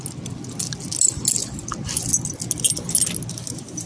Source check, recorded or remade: recorded